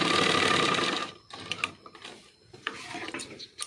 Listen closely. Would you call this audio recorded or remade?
recorded